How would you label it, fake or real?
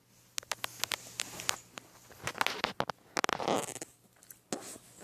real